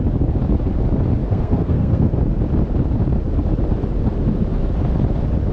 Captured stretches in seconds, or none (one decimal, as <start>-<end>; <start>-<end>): 0.0-1.2; 2.2-5.5